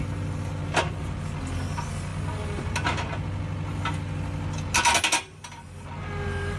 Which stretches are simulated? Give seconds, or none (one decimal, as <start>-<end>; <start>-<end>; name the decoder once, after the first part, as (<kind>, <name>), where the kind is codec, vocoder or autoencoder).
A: none